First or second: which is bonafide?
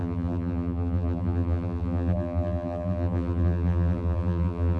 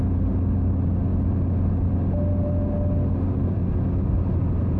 second